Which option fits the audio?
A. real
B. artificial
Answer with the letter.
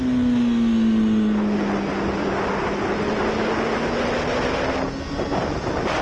A